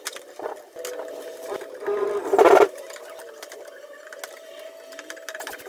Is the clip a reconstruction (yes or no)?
no